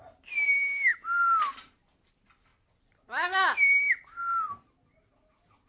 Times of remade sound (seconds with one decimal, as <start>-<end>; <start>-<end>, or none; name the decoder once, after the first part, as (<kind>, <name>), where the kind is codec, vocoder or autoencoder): none